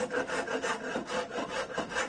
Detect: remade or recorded recorded